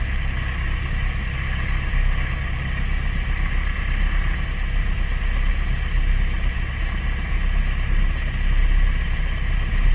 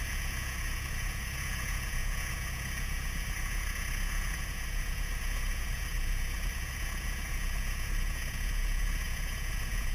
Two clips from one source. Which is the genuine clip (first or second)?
first